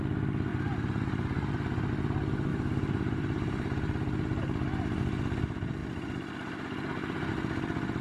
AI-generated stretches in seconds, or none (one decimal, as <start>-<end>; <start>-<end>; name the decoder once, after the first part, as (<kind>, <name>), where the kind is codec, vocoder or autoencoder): 0.5-1.9 (vocoder, BigVGAN v2); 2.5-5.0; 5.8-7.3